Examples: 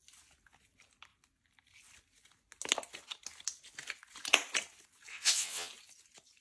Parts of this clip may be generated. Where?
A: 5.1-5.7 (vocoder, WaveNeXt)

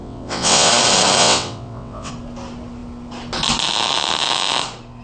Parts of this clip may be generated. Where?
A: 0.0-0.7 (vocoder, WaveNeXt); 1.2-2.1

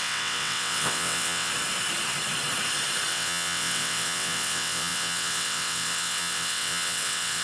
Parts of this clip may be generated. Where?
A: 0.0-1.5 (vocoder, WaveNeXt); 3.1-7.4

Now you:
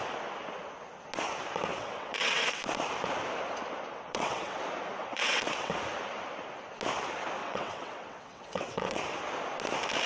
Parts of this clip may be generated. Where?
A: 1.7-2.6 (vocoder, WaveNeXt); 3.9-4.6; 5.0-5.7; 7.4-9.0

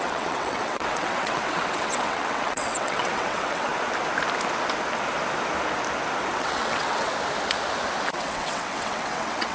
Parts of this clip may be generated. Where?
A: 0.0-3.7 (vocoder, WaveNeXt); 6.3-7.1; 8.1-9.5

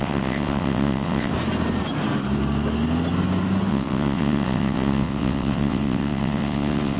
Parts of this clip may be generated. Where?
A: 0.0-1.3 (vocoder, WaveNeXt); 3.7-7.0